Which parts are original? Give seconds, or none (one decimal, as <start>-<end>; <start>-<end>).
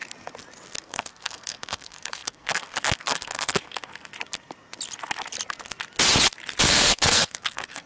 0.0-0.8; 4.1-6.6